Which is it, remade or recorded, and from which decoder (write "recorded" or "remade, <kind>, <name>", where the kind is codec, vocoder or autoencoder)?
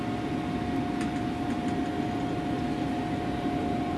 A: recorded